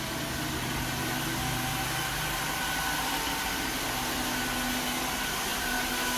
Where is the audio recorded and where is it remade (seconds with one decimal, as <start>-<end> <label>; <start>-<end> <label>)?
0.0-6.2 recorded